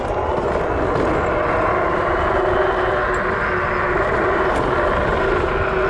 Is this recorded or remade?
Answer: recorded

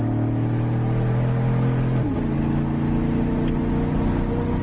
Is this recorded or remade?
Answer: recorded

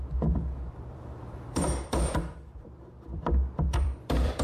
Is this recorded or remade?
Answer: remade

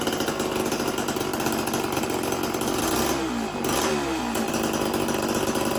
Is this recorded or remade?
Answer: recorded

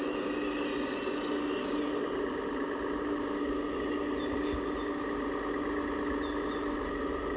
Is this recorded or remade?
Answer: recorded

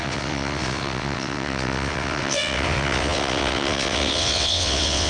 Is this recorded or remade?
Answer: remade